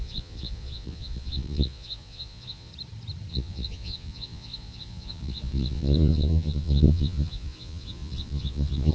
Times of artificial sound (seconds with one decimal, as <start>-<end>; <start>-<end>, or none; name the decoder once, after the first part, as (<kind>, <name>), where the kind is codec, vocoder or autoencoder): 0.0-2.7 (vocoder, Vocos); 3.3-8.9